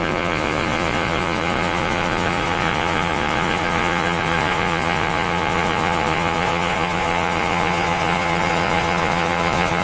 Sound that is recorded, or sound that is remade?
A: remade